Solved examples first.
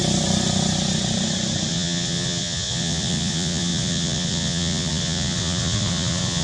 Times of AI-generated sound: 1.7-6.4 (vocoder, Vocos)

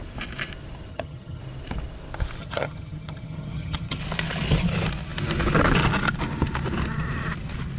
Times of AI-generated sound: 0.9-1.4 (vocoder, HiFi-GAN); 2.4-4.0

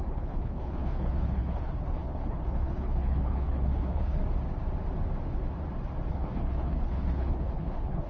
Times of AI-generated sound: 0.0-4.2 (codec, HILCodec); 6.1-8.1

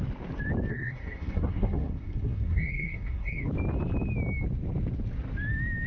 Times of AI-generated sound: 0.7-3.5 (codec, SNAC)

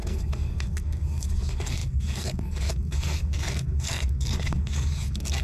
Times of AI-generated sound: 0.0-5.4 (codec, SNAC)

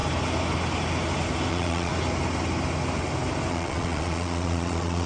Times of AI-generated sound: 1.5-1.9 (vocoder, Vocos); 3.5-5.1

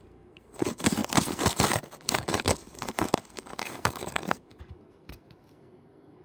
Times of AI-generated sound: 0.0-6.2 (codec, SNAC)

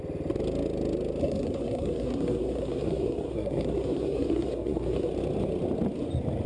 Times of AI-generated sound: 1.2-5.1 (codec, SNAC)